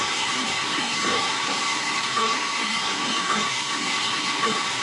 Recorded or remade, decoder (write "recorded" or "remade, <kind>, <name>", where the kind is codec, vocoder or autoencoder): remade, codec, SNAC